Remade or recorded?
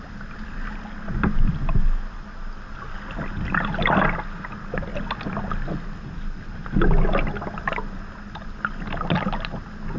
recorded